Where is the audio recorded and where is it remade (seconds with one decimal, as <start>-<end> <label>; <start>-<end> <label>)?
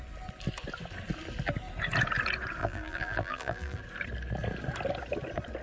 0.0-2.6 recorded; 2.6-3.8 remade; 3.8-5.6 recorded